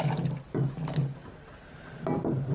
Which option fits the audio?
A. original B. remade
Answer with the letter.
A